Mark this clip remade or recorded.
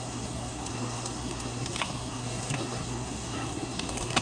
remade